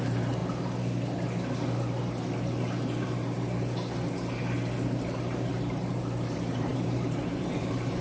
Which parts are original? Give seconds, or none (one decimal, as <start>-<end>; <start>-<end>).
0.4-5.2

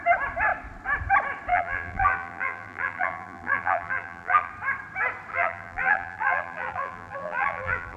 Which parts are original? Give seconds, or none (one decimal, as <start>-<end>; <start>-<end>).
0.0-1.5; 4.5-5.3

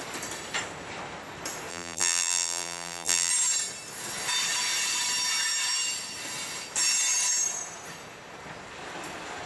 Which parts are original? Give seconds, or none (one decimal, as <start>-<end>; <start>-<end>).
0.0-1.7; 3.3-9.5